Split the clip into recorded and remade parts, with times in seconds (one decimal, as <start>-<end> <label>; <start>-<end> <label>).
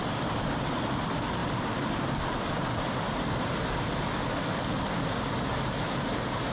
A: 0.0-6.5 recorded